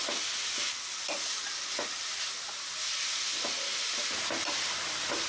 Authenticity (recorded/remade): recorded